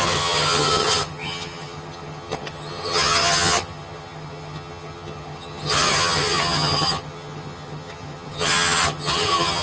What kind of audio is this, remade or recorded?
remade